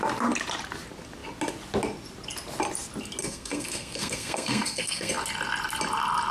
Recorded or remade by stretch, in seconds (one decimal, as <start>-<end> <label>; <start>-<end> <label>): 0.0-3.2 recorded; 3.2-5.1 remade; 5.1-6.3 recorded